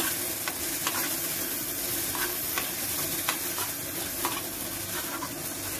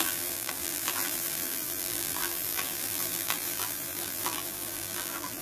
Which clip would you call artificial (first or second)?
second